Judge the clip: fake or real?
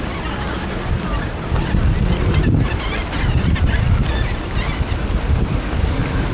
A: real